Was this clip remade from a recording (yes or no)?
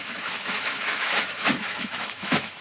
yes